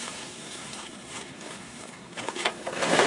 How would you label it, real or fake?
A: fake